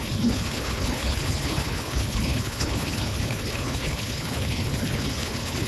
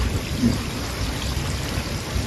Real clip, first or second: second